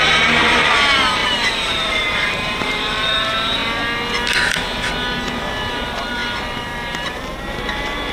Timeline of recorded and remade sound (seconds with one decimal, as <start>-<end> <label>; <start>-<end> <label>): 0.0-3.6 remade; 3.6-5.7 recorded; 5.7-8.1 remade